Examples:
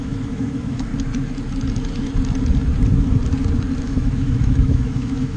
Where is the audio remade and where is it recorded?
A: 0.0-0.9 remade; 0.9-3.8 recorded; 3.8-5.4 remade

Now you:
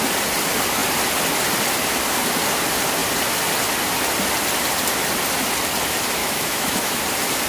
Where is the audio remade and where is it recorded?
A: 0.0-6.2 recorded; 6.2-7.0 remade; 7.0-7.5 recorded

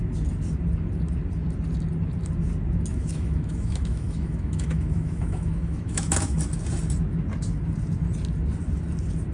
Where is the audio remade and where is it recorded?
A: 0.0-2.9 recorded; 2.9-6.4 remade; 6.4-9.3 recorded

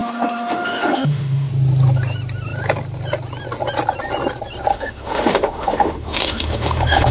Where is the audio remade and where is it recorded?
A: 0.0-1.5 remade; 1.5-4.7 recorded; 4.7-7.1 remade

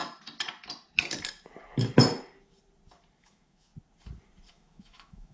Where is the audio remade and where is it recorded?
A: 0.0-3.2 recorded; 3.2-3.7 remade; 3.7-4.5 recorded; 4.5-5.3 remade